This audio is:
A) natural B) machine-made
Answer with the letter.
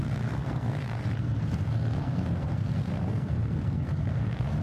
B